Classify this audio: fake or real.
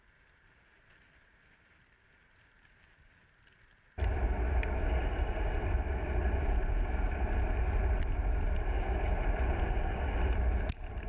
real